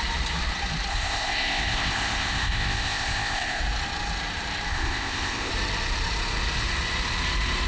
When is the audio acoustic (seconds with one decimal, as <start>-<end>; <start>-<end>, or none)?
0.0-0.9; 3.6-4.7; 5.5-7.7